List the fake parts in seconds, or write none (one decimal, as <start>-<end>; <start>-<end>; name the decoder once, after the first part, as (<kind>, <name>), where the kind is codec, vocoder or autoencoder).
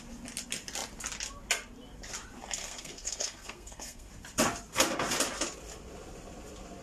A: 2.6-4.1 (codec, SNAC)